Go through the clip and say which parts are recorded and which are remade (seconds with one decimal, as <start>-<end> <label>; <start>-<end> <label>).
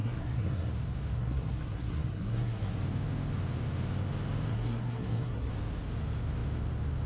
0.0-0.7 remade; 0.7-1.2 recorded; 1.2-2.8 remade; 2.8-4.5 recorded; 4.5-5.5 remade; 5.5-7.1 recorded